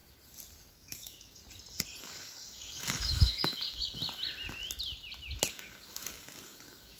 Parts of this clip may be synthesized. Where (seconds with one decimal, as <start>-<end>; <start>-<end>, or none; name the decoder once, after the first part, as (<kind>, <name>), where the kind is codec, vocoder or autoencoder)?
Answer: 0.7-1.4 (codec, DAC); 2.0-4.0; 5.5-7.0